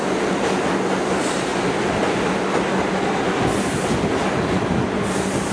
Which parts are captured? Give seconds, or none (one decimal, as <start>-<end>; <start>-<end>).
0.0-5.5